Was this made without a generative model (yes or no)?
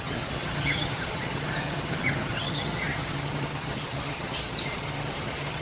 no